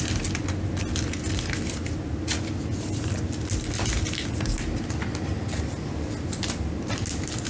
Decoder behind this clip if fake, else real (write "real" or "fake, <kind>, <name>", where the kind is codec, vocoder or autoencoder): real